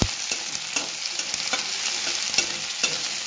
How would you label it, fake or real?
real